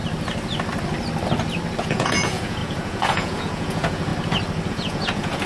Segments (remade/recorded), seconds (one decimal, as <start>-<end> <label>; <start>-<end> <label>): 0.0-1.8 recorded; 1.8-4.1 remade; 4.1-4.7 recorded; 4.7-5.5 remade